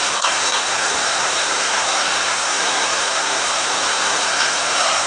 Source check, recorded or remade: remade